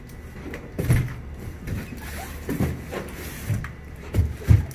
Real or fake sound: fake